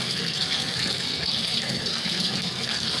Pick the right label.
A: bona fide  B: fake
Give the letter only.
B